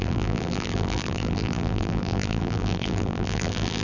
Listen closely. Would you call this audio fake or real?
fake